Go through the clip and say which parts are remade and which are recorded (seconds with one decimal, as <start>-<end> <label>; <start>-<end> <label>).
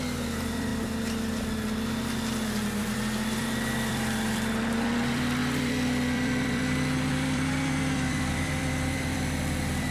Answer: 0.0-0.7 remade; 0.7-2.8 recorded; 2.8-9.9 remade